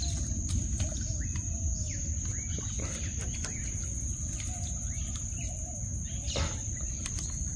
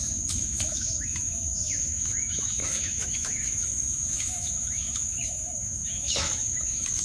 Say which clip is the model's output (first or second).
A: second